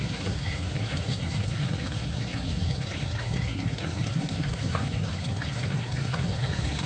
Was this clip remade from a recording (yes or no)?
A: yes